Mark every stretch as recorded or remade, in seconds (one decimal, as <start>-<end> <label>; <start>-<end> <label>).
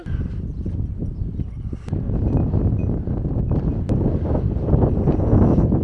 0.0-5.8 recorded